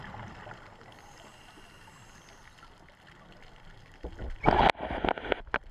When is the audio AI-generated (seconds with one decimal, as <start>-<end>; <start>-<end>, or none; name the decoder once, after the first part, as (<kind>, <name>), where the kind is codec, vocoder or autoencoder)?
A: none